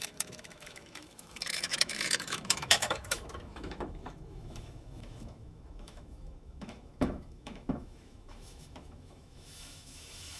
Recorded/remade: remade